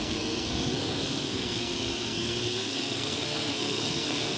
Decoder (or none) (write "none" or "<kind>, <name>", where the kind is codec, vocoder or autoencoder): codec, SNAC